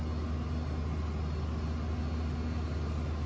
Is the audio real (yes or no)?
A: yes